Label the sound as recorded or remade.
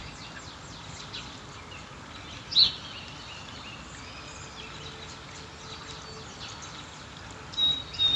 recorded